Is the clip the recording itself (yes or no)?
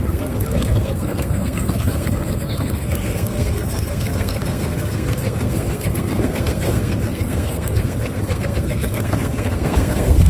no